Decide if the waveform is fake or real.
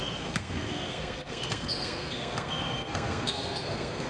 fake